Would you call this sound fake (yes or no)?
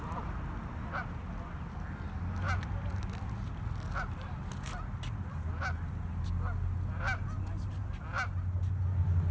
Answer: no